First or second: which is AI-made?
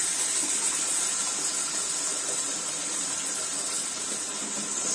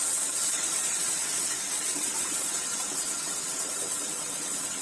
second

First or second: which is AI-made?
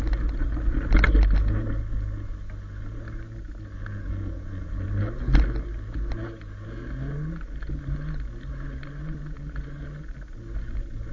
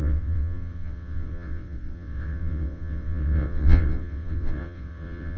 second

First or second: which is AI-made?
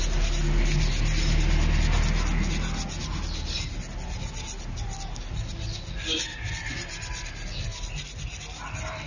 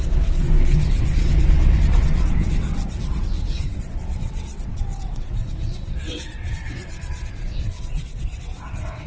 second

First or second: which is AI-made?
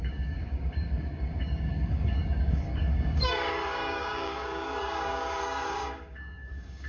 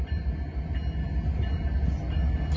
first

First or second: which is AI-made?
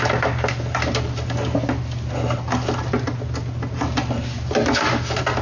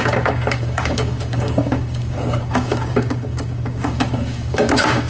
second